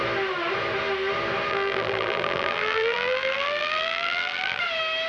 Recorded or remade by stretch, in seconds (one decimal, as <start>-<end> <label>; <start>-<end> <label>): 0.0-1.5 recorded; 1.5-4.6 remade; 4.6-5.1 recorded